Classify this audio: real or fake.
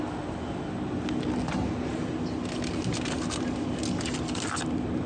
real